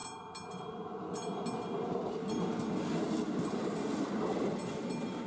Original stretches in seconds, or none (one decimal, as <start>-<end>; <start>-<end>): 0.0-5.3